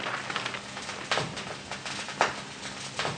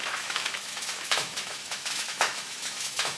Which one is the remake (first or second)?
second